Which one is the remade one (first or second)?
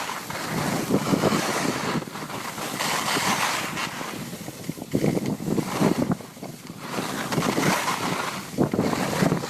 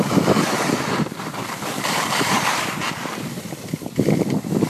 second